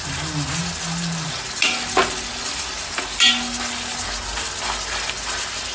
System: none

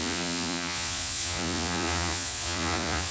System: vocoder, Vocos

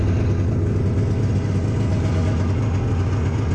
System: none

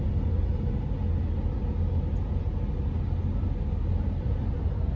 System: none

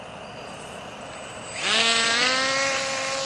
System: none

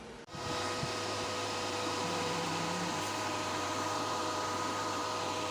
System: vocoder, BigVGAN v2